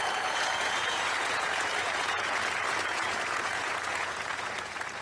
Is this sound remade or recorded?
remade